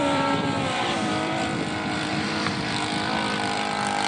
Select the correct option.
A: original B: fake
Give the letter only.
B